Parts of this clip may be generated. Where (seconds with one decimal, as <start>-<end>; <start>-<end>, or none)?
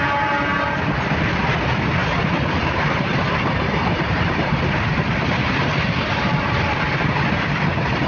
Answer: 2.0-6.8